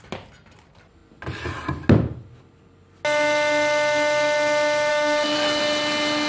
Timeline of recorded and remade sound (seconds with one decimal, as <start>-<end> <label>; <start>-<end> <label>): 0.0-4.9 recorded; 4.9-5.6 remade; 5.6-6.3 recorded